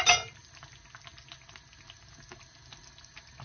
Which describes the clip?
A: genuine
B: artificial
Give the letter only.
A